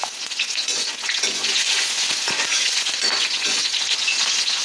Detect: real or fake fake